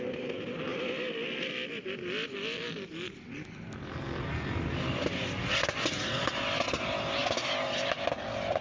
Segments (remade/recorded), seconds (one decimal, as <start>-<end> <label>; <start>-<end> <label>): 0.0-8.6 recorded